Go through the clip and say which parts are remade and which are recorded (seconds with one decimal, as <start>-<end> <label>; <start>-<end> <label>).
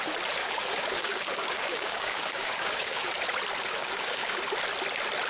0.0-0.4 recorded; 0.4-3.1 remade; 3.1-3.8 recorded; 3.8-4.4 remade; 4.4-5.3 recorded